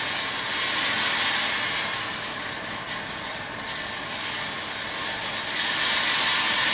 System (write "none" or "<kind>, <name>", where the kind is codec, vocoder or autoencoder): none